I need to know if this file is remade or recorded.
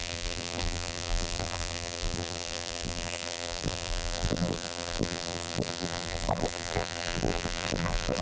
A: remade